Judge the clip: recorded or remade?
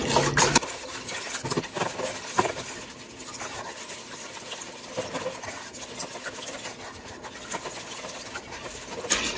recorded